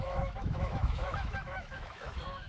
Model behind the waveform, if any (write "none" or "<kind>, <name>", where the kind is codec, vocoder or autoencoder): autoencoder, DAC-VAE